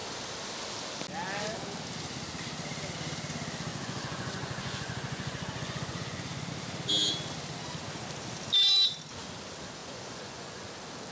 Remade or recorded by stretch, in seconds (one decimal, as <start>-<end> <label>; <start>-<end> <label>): 0.0-3.7 recorded; 3.7-6.5 remade; 6.5-9.8 recorded; 9.8-10.7 remade; 10.7-11.1 recorded